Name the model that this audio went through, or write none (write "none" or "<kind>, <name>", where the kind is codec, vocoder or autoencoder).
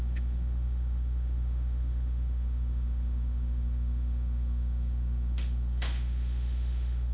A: autoencoder, DAC-VAE